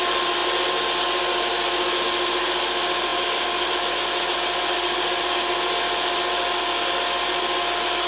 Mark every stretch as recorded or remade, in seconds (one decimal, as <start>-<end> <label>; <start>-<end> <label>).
0.0-8.1 recorded